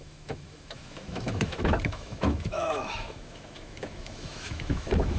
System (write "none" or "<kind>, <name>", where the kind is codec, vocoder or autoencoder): autoencoder, DAC-VAE